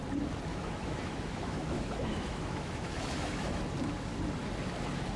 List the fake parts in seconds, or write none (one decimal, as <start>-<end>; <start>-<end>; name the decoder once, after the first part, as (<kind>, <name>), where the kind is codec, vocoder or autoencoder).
0.5-3.6 (autoencoder, DAC-VAE)

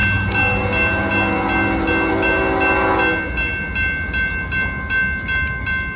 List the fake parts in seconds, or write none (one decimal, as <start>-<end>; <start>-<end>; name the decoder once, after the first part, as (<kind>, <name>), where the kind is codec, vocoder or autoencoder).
none